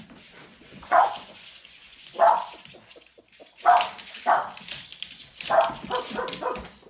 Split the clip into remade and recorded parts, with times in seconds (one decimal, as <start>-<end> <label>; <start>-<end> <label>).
0.0-0.5 recorded; 0.5-2.3 remade; 2.3-6.9 recorded